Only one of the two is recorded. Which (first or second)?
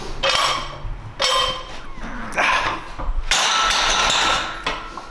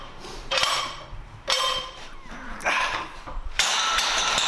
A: first